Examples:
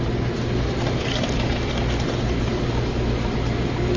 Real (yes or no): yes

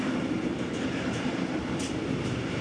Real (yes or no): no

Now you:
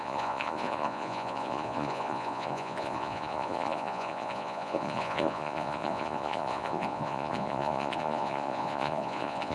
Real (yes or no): no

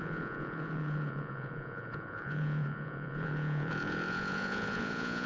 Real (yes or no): no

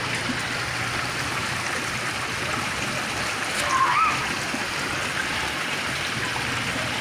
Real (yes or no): yes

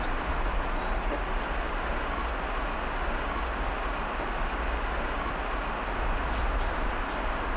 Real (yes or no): yes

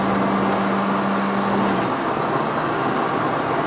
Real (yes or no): yes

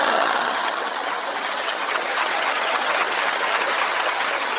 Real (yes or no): no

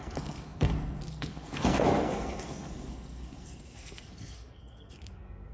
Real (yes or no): no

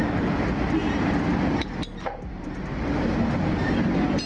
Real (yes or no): yes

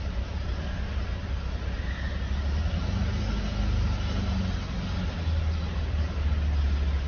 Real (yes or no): yes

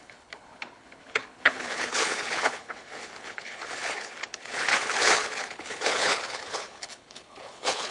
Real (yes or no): no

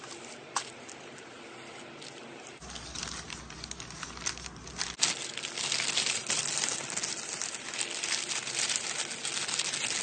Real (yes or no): yes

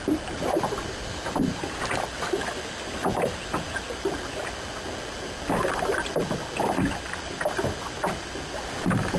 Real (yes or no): yes